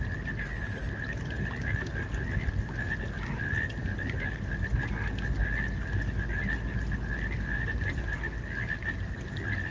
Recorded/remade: recorded